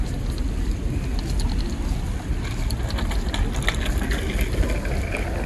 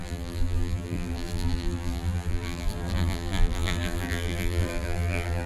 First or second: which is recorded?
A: first